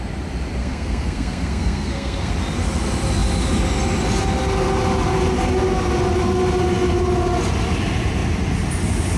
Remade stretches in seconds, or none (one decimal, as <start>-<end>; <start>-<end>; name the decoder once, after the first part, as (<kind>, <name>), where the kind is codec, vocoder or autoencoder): 0.6-2.3 (codec, SNAC)